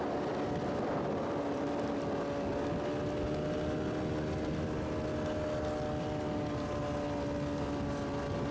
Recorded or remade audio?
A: recorded